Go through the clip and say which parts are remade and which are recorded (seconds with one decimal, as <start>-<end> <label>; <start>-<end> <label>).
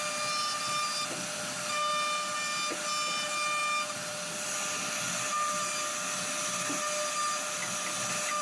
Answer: 0.0-8.4 recorded